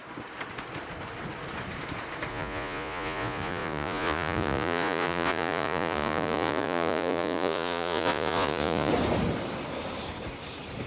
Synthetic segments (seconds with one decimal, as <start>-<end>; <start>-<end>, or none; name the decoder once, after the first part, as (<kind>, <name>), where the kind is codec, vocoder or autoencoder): 2.3-8.9 (vocoder, Vocos)